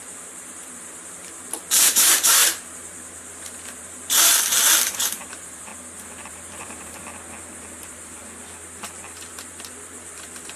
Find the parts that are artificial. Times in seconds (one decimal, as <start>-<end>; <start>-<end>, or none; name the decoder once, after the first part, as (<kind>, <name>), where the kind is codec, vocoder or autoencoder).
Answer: 0.0-5.7 (vocoder, BigVGAN v2); 6.3-7.0; 7.8-8.2; 8.8-10.6